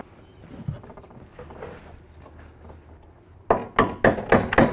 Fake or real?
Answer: real